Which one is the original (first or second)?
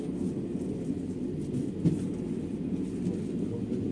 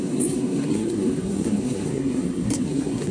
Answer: first